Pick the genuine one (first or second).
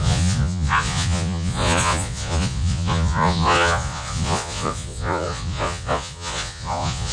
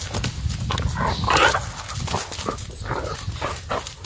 second